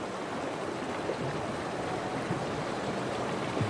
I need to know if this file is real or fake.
real